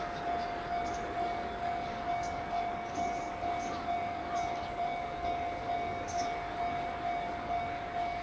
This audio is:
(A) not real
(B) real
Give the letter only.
A